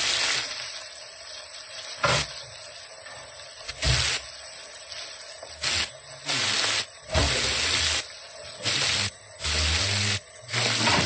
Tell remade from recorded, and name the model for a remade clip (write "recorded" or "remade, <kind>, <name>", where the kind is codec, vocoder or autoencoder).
recorded